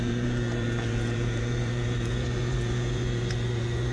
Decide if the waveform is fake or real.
fake